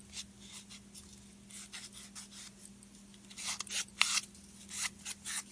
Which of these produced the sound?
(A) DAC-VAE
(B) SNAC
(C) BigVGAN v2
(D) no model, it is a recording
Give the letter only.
D